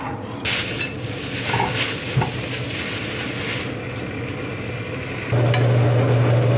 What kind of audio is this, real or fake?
real